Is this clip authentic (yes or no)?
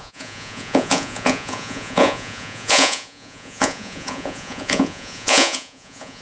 no